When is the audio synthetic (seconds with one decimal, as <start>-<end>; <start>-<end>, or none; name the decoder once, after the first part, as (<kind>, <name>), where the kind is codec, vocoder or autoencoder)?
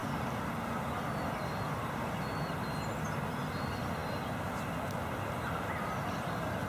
none